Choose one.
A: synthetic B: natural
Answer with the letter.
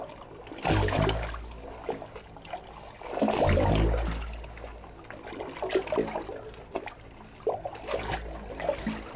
B